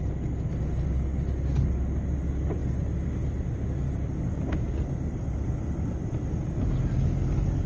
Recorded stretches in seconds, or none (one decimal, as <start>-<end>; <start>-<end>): 0.0-7.7